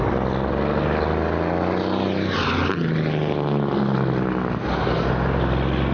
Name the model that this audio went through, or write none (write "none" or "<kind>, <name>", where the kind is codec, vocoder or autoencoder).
none